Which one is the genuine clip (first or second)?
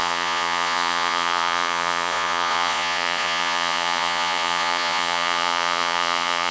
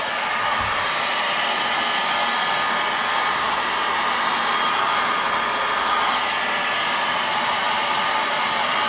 second